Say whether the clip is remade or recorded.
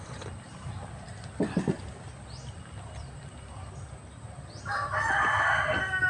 remade